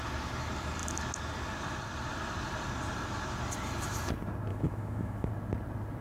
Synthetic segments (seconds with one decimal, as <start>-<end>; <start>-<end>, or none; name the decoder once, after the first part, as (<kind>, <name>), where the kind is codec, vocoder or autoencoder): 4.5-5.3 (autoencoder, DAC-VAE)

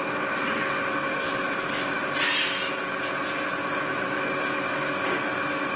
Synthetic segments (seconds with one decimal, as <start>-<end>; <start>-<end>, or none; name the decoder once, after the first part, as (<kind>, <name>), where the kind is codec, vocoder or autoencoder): 1.1-1.8 (autoencoder, DAC-VAE)

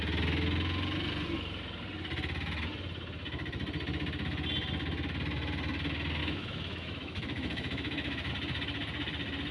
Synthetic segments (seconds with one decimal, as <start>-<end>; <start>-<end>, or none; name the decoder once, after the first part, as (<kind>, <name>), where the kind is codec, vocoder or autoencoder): 6.2-8.3 (autoencoder, DAC-VAE)

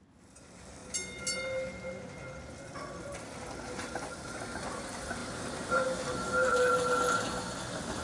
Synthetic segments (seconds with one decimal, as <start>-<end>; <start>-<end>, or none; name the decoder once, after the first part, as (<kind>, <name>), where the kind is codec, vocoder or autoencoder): none

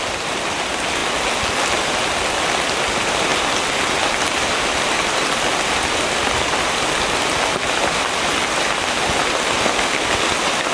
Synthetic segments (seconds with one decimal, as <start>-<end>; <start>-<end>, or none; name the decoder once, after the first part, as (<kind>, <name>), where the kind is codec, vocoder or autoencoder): none

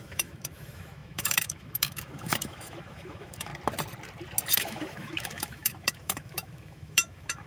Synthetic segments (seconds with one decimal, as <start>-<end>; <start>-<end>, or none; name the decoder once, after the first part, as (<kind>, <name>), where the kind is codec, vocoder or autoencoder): 0.0-3.5 (autoencoder, DAC-VAE); 4.5-7.5